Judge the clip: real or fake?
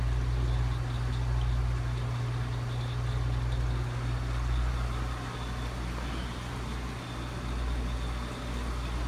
real